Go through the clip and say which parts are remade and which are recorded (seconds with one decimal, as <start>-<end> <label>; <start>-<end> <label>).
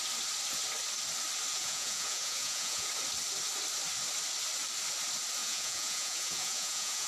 0.0-1.5 recorded; 1.5-2.9 remade; 2.9-5.4 recorded; 5.4-7.1 remade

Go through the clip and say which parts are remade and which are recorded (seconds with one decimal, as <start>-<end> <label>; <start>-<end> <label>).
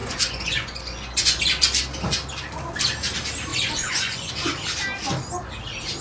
0.0-1.4 remade; 1.4-3.5 recorded; 3.5-4.3 remade; 4.3-6.0 recorded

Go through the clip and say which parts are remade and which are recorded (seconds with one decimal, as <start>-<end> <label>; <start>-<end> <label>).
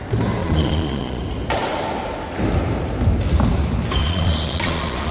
0.0-0.4 recorded; 0.4-1.2 remade; 1.2-4.0 recorded; 4.0-5.1 remade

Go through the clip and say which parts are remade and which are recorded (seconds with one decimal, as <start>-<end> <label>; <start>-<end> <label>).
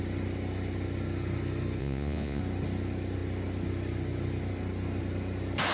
0.0-1.8 recorded; 1.8-2.4 remade; 2.4-5.7 recorded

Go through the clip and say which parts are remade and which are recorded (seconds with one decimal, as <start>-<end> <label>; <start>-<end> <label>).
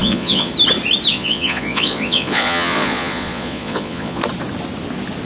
0.0-0.5 remade; 0.5-1.1 recorded; 1.1-4.2 remade; 4.2-5.3 recorded